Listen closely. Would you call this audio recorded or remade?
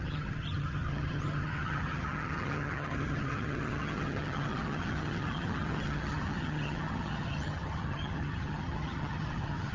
remade